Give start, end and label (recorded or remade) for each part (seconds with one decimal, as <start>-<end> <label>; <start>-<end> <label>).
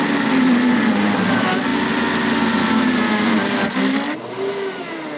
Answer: 0.0-5.2 recorded